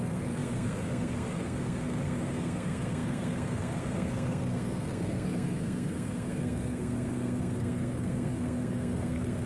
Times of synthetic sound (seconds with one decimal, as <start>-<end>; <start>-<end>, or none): 0.0-9.5